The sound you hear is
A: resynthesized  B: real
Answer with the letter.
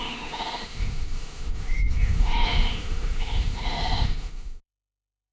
A